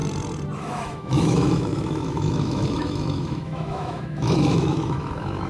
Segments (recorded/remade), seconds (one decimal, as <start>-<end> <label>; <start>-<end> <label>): 0.0-0.6 recorded; 0.6-5.5 remade